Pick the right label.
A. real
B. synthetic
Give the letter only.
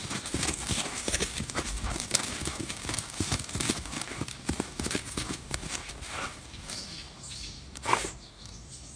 B